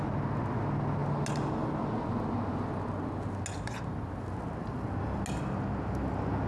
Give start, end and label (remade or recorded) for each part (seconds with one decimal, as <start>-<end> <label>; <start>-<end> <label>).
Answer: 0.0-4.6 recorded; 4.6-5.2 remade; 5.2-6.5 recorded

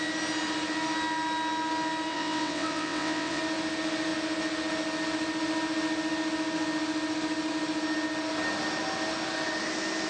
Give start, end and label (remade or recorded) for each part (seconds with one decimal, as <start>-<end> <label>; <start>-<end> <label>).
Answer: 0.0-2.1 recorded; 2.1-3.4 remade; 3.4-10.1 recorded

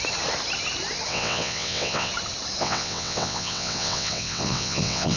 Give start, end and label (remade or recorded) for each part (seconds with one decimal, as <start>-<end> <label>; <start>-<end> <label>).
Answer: 0.0-1.1 recorded; 1.1-2.1 remade; 2.1-2.6 recorded; 2.6-5.2 remade